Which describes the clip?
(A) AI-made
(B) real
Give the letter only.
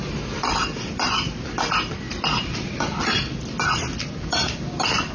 A